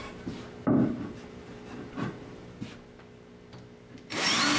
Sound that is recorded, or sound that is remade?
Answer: recorded